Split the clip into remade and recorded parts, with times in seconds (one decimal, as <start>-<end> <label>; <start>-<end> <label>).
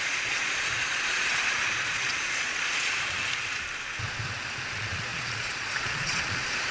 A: 0.0-3.2 remade; 3.2-4.6 recorded; 4.6-6.7 remade